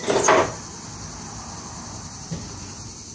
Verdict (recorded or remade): recorded